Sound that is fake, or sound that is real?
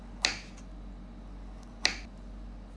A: real